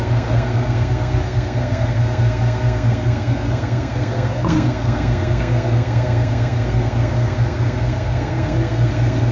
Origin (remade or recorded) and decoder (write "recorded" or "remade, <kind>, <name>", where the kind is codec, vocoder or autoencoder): remade, codec, SNAC